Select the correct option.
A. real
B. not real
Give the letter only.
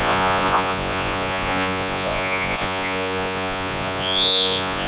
B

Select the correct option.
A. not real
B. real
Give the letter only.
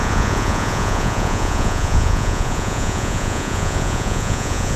A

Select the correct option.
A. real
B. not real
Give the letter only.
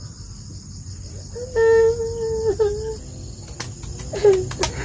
A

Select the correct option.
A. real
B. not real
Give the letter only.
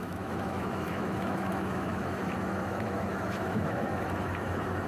B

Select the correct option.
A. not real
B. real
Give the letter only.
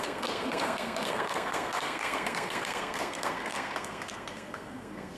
A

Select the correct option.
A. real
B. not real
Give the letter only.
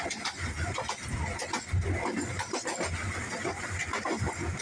A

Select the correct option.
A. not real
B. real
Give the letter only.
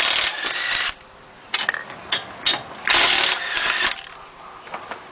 B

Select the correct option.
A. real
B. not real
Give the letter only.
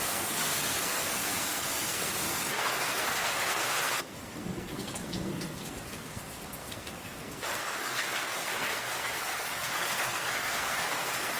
B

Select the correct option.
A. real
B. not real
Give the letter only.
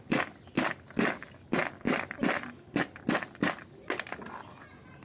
A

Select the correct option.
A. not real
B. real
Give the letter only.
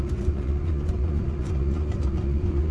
A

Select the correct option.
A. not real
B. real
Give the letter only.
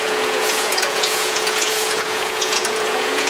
A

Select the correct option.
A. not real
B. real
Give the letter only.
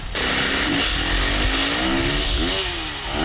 B